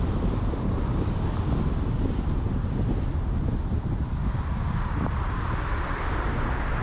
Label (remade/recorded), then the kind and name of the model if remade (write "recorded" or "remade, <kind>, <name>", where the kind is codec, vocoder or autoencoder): remade, vocoder, BigVGAN v2